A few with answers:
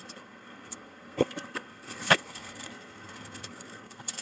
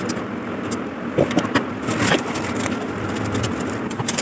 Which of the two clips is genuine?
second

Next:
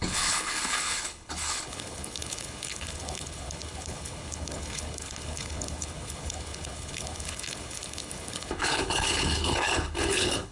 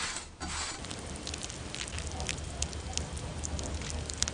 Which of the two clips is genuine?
second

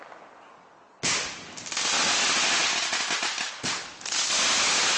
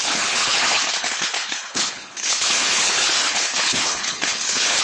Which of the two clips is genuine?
first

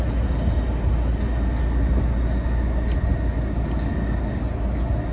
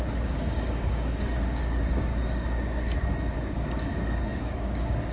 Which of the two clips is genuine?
first